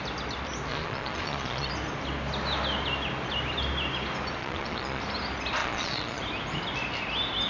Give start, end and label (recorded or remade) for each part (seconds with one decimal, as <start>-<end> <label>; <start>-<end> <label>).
0.0-0.7 recorded; 0.7-1.7 remade; 1.7-4.4 recorded; 4.4-5.0 remade; 5.0-5.6 recorded; 5.6-6.2 remade; 6.2-7.5 recorded